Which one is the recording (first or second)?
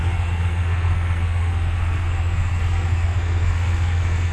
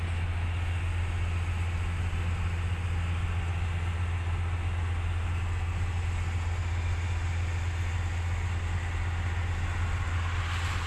second